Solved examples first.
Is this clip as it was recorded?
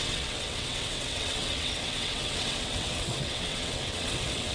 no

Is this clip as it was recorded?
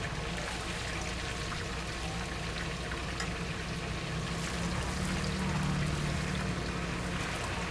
yes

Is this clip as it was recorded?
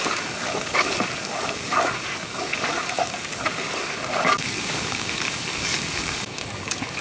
no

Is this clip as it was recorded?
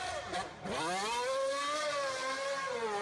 yes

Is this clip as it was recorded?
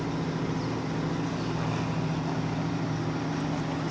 yes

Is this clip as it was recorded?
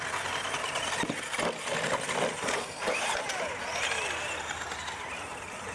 yes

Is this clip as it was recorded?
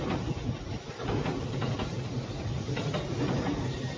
yes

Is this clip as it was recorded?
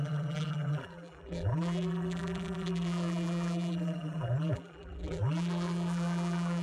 no